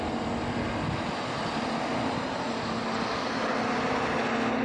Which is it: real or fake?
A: real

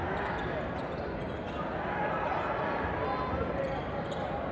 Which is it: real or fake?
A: real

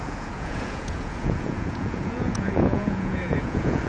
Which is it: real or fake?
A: fake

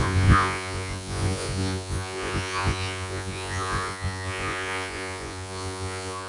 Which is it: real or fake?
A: fake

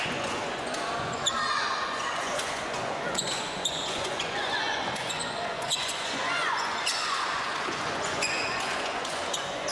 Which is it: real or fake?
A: fake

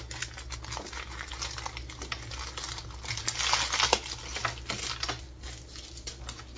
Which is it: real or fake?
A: real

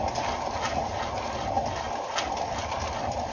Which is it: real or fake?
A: real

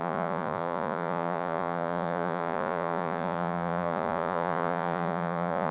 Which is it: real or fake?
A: fake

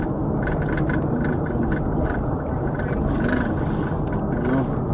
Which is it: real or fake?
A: real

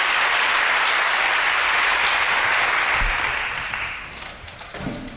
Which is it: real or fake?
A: real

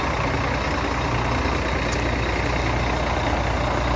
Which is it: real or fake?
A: real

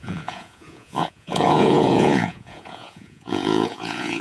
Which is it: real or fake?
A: fake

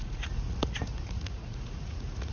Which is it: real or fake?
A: fake